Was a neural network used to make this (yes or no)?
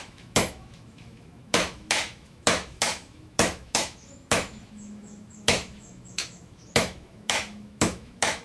yes